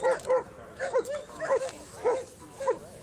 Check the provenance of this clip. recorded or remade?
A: remade